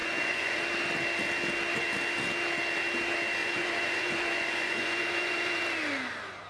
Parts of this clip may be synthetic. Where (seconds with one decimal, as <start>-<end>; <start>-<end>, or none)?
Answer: 0.0-0.6; 3.4-5.6